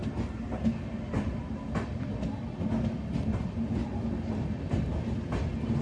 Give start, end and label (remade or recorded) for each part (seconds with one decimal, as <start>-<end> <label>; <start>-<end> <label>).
0.0-5.8 recorded